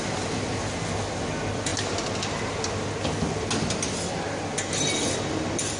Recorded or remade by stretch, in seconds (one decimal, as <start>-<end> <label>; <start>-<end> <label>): 0.0-5.8 recorded